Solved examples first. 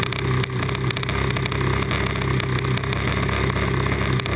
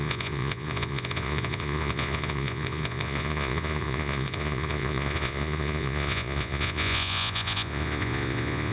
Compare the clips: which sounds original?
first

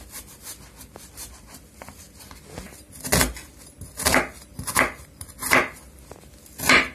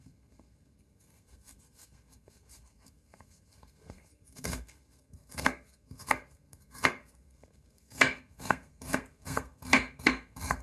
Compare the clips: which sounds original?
first